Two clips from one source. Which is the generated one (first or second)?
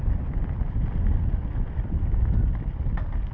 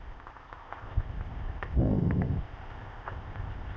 second